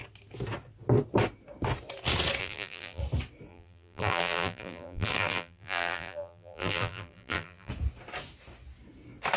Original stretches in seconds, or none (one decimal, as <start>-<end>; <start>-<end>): 0.0-2.4; 3.0-3.5; 7.7-9.4